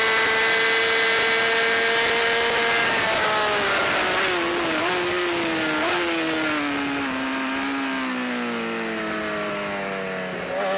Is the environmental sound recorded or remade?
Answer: recorded